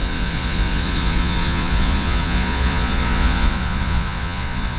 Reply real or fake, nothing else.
fake